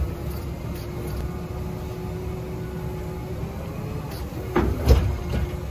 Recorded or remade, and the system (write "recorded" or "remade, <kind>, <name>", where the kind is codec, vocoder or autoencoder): recorded